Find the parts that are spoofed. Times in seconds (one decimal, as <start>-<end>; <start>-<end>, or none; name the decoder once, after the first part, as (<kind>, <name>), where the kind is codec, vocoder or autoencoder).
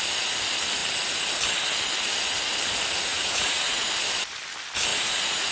3.1-3.9 (vocoder, Vocos); 4.9-5.5